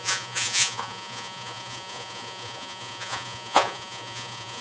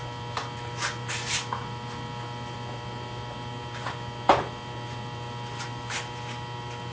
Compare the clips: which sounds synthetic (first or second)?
first